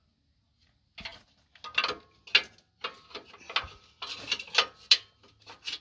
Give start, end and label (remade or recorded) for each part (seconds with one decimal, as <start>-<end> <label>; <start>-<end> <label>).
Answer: 0.0-5.8 recorded